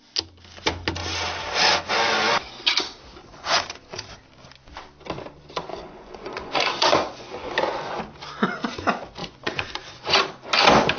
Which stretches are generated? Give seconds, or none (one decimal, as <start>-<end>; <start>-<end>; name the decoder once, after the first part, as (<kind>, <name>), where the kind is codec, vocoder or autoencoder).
3.2-4.1 (vocoder, Vocos); 5.7-8.0; 9.2-10.2